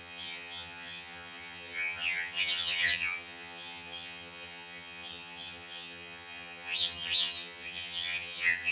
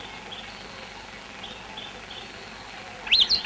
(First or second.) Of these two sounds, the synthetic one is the first